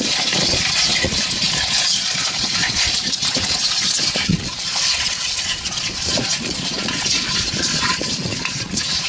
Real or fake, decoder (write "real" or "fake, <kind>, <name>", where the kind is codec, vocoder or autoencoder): fake, vocoder, Vocos